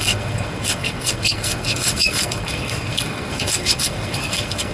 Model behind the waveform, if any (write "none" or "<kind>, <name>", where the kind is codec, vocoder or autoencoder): codec, SNAC